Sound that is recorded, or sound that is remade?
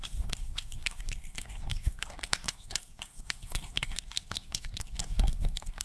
remade